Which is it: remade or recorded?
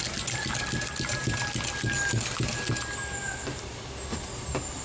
recorded